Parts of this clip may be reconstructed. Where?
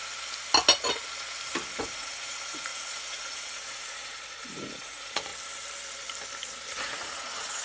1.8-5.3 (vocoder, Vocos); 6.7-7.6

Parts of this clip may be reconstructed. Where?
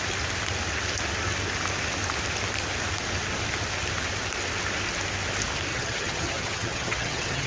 5.7-7.5 (vocoder, HiFi-GAN)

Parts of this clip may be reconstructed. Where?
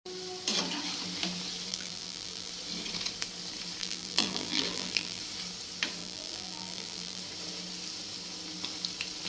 1.7-2.5 (vocoder, BigVGAN v2); 3.8-5.2; 6.0-7.2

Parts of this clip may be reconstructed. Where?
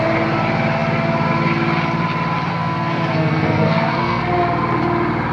2.5-4.2 (codec, SNAC)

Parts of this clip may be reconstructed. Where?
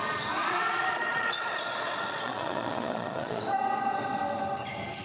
0.4-3.4 (vocoder, Vocos)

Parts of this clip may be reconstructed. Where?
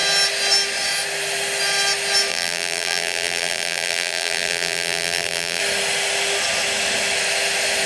2.3-5.6 (vocoder, BigVGAN v2)